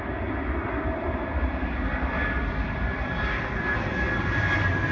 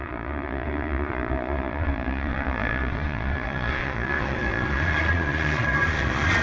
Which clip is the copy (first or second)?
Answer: second